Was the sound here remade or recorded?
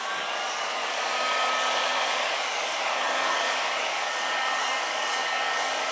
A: remade